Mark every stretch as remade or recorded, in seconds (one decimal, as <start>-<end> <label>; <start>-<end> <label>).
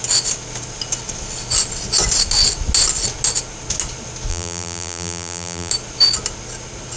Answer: 0.0-4.3 recorded; 4.3-5.7 remade; 5.7-7.0 recorded